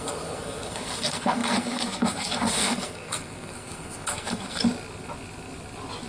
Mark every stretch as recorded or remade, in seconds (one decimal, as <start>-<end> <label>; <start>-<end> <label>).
0.0-4.6 remade; 4.6-6.1 recorded